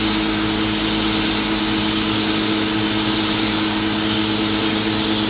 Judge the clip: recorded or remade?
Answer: recorded